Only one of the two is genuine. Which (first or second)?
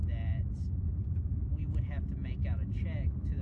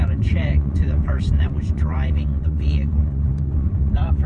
first